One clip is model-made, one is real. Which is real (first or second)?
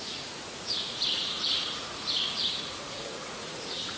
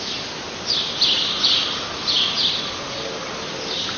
second